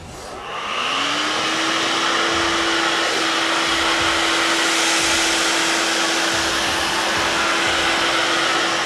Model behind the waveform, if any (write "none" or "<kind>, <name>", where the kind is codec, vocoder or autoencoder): none